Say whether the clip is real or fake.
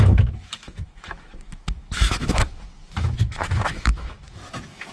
fake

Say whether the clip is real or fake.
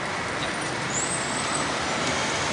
real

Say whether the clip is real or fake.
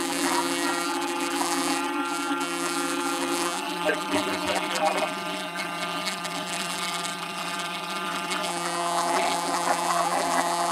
fake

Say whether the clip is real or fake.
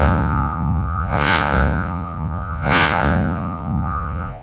fake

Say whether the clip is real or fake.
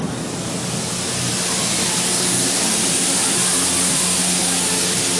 real